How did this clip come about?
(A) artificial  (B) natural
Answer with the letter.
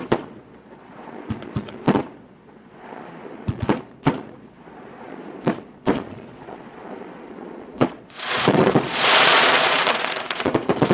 A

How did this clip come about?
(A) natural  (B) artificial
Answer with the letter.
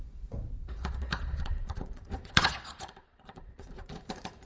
B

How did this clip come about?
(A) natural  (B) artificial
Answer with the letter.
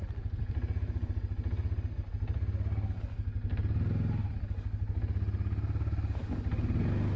A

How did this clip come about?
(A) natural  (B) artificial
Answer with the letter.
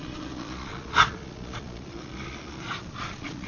B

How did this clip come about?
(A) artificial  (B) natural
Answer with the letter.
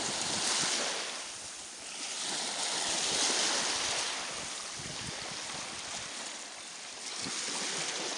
B